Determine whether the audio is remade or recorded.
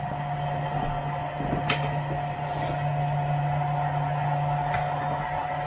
recorded